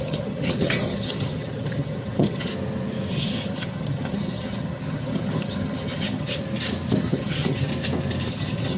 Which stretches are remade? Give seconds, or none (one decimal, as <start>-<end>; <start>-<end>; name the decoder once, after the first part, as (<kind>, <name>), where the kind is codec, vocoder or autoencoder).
0.0-2.5 (vocoder, HiFi-GAN); 3.1-6.4; 7.0-7.7; 8.3-8.8